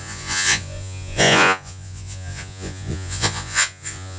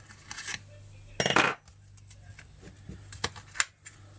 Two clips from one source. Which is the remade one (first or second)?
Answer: first